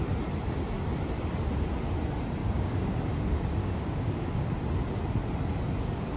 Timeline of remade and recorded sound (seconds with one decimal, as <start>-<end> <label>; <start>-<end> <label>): 0.0-2.4 recorded; 2.4-3.0 remade; 3.0-3.6 recorded; 3.6-4.5 remade; 4.5-6.2 recorded